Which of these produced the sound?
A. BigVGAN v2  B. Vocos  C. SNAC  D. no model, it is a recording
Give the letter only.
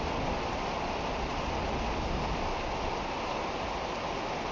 D